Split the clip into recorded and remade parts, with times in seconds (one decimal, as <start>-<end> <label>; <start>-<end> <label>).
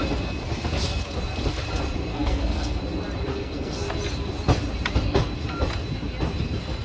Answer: 0.0-2.1 recorded; 2.1-2.8 remade; 2.8-3.3 recorded; 3.3-3.8 remade; 3.8-6.8 recorded